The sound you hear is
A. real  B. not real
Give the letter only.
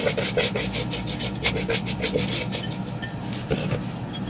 A